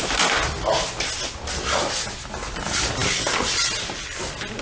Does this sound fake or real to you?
real